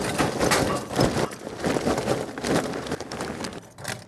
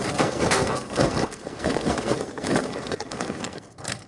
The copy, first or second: second